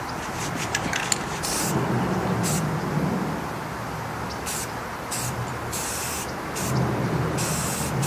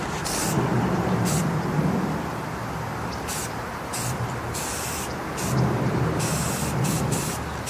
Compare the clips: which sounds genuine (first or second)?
first